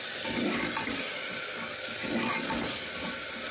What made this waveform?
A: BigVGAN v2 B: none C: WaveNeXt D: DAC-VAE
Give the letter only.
B